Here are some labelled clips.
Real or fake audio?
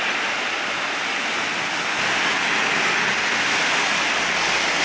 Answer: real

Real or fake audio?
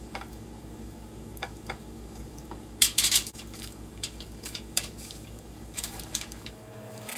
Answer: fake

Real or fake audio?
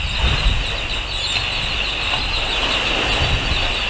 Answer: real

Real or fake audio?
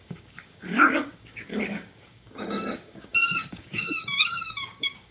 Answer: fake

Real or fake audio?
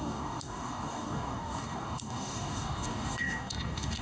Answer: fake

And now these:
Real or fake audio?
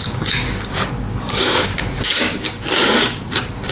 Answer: fake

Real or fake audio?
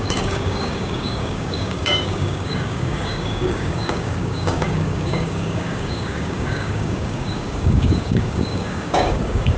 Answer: fake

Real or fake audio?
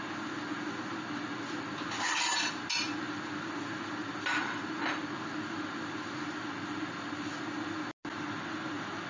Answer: real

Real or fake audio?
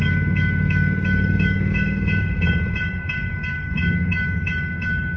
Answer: fake